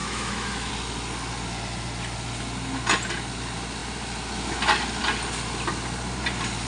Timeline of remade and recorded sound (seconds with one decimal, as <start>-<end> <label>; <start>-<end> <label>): 0.0-0.7 remade; 0.7-6.7 recorded